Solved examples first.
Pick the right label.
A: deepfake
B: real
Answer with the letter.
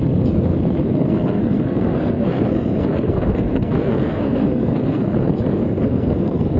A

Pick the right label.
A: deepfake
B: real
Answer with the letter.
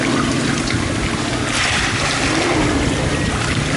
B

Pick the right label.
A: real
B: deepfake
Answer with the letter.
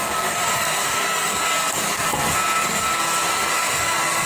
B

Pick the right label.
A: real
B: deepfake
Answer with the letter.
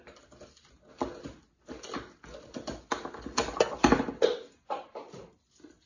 A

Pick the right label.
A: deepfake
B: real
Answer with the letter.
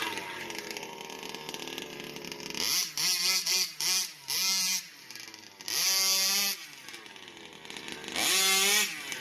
B